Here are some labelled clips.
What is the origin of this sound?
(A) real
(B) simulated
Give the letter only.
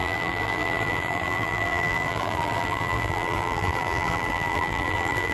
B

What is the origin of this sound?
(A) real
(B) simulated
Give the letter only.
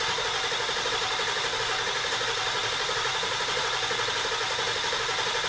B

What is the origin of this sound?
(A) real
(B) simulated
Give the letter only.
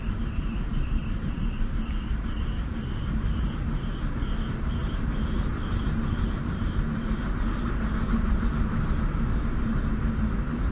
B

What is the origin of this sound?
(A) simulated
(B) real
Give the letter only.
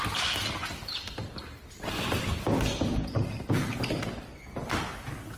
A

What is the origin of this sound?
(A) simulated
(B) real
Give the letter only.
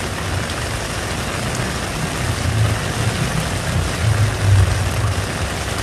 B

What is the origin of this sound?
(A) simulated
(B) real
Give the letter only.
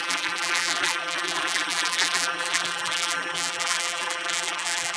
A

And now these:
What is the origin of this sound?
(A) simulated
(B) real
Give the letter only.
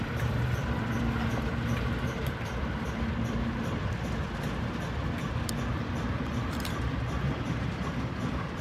A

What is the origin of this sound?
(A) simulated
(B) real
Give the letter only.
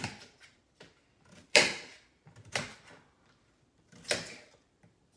A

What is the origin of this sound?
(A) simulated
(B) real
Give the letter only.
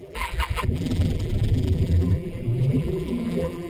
A